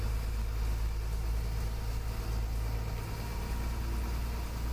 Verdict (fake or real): real